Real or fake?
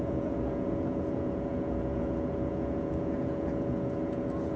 fake